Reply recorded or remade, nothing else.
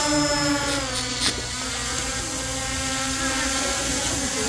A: recorded